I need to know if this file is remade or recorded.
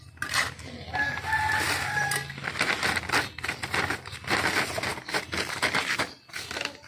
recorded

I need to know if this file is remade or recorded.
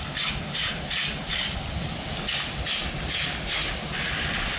recorded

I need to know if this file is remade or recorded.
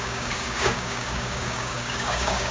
remade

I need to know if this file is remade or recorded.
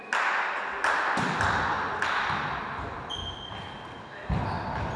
recorded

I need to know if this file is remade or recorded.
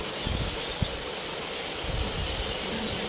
recorded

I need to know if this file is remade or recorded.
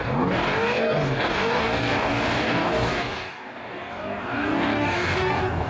remade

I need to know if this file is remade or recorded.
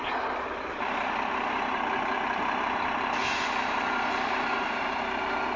recorded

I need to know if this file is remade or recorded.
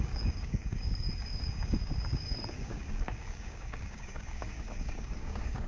remade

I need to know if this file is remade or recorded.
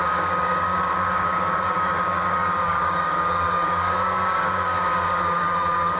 remade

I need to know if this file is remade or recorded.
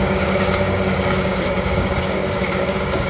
remade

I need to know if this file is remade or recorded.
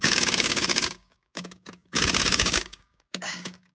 remade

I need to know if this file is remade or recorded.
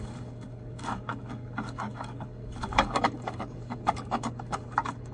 remade